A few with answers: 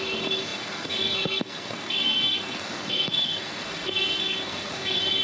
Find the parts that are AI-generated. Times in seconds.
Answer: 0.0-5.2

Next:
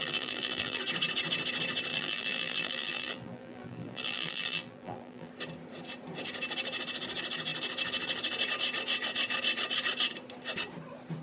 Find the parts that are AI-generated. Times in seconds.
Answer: 0.0-0.8; 1.9-5.3

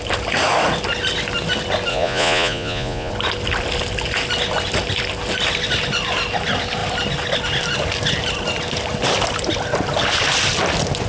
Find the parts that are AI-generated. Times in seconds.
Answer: 1.9-3.1

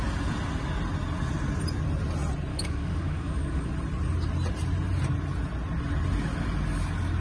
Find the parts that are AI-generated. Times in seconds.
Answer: 2.5-3.7

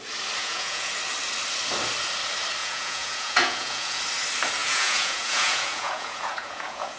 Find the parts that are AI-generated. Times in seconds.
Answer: 0.4-0.9; 2.6-4.0; 4.6-7.0